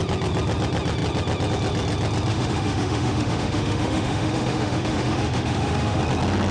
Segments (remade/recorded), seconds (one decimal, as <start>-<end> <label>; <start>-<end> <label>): 0.0-2.3 recorded; 2.3-6.0 remade; 6.0-6.5 recorded